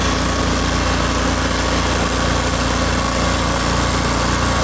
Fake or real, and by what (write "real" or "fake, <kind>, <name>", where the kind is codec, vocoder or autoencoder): real